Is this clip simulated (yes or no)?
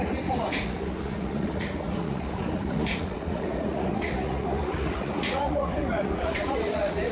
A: yes